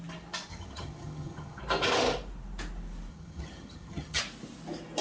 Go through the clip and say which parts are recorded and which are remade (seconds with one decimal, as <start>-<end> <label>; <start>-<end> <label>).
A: 0.0-0.5 recorded; 0.5-1.6 remade; 1.6-3.1 recorded; 3.1-4.2 remade; 4.2-5.0 recorded